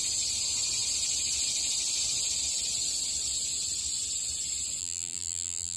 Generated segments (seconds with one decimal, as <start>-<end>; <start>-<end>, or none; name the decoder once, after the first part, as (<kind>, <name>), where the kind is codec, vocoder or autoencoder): 4.8-5.8 (vocoder, BigVGAN v2)